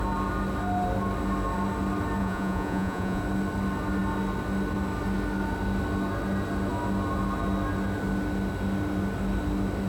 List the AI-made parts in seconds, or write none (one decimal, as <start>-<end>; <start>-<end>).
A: 2.2-3.2